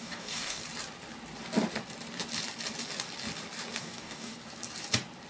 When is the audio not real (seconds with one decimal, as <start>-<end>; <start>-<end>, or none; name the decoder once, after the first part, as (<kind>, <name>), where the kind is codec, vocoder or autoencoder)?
0.0-0.6 (codec, DAC); 3.8-4.3